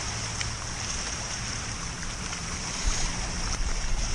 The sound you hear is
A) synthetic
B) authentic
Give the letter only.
A